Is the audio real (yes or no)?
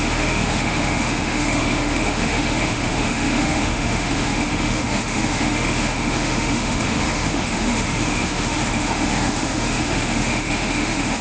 no